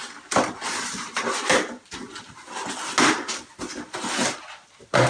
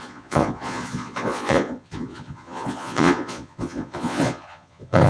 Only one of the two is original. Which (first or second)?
first